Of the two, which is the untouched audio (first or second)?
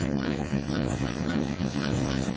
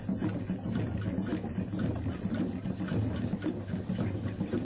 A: second